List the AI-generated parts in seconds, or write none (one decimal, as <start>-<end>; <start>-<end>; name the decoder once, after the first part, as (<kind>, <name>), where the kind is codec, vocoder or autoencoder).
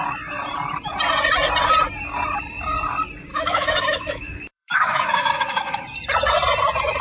3.3-5.8 (autoencoder, DAC-VAE)